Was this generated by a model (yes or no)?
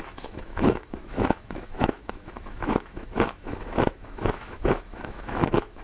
yes